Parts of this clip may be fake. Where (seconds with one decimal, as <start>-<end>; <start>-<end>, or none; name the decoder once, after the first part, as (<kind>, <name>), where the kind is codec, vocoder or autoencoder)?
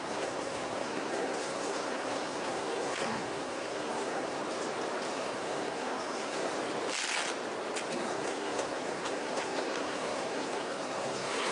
0.0-4.4 (codec, SNAC); 5.1-6.5; 7.9-11.5